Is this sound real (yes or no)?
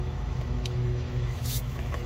no